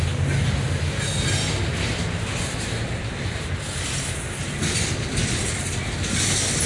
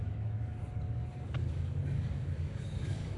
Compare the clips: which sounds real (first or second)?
first